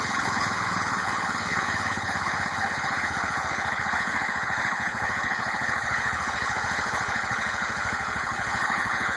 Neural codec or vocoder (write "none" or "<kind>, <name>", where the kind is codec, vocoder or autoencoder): codec, HILCodec